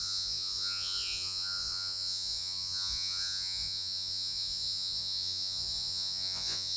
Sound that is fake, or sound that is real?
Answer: fake